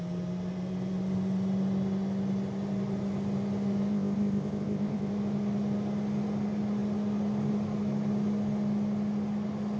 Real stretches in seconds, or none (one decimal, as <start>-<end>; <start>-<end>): 0.0-3.9; 5.1-9.8